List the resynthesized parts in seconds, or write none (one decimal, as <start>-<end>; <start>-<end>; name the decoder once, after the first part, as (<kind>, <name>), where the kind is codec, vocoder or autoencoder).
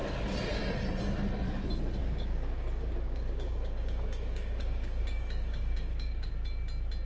2.0-6.3 (codec, DAC)